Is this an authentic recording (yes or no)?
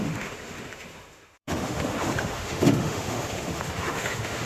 no